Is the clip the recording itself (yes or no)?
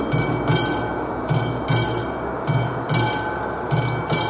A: yes